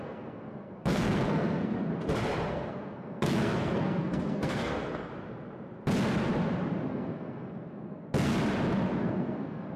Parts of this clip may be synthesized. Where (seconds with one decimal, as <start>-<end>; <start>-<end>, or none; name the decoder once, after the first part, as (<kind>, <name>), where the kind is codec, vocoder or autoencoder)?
0.0-1.9 (codec, SNAC); 2.5-5.1; 6.9-8.3; 9.0-9.8

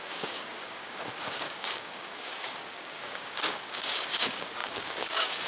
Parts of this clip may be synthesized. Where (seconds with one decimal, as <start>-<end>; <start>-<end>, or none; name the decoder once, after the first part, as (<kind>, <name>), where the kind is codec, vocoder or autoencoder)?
0.0-5.5 (codec, DAC)

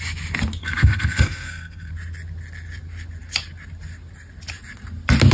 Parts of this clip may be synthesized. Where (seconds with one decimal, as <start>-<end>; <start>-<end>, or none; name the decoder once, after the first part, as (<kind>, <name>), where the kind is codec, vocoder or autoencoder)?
0.6-1.9 (codec, SNAC)

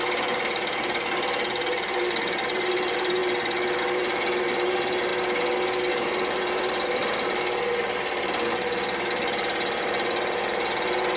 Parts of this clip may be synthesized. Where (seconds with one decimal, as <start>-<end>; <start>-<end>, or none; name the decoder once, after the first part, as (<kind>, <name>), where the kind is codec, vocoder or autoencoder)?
0.0-3.2 (vocoder, BigVGAN v2); 3.8-5.1; 5.9-7.0; 7.8-11.2

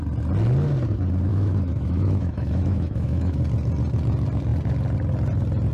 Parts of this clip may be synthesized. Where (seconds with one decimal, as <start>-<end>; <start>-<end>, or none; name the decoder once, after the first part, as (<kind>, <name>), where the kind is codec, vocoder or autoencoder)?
1.3-3.4 (autoencoder, DAC-VAE)

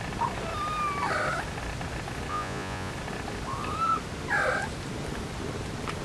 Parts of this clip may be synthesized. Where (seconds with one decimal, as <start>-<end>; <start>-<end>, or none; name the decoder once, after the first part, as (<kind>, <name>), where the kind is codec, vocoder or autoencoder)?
2.3-2.9 (vocoder, Vocos)

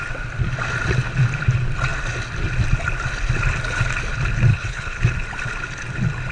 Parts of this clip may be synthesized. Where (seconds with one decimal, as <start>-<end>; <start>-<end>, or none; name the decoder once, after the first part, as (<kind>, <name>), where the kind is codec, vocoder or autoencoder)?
4.5-5.0 (codec, HILCodec)